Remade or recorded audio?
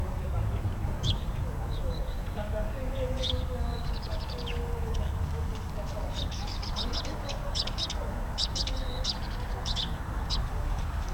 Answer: remade